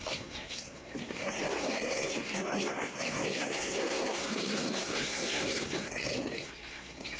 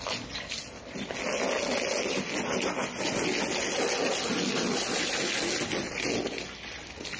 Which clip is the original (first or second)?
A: second